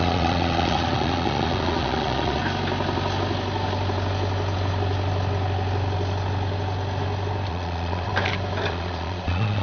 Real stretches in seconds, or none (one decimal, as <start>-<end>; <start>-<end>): 2.4-7.5; 8.1-8.7